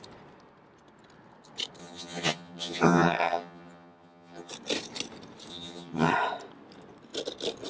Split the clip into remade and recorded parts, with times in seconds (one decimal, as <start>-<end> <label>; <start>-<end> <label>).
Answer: 0.0-1.8 recorded; 1.8-4.5 remade; 4.5-5.5 recorded; 5.5-6.1 remade; 6.1-7.7 recorded